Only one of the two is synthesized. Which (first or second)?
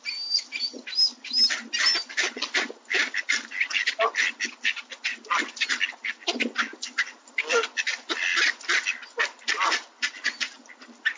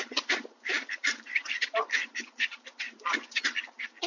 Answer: second